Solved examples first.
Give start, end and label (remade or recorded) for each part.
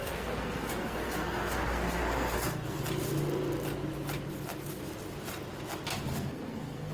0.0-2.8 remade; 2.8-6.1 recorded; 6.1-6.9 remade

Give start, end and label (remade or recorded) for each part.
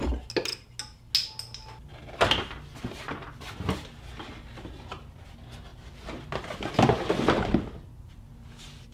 0.0-8.9 recorded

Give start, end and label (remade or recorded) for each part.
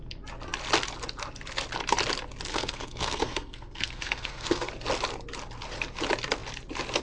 0.0-2.5 recorded; 2.5-4.7 remade; 4.7-7.0 recorded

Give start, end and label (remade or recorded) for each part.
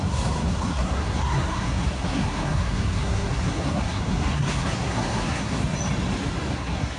0.0-5.6 remade; 5.6-6.5 recorded; 6.5-7.0 remade